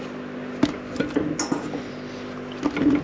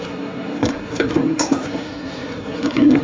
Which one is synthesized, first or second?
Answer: second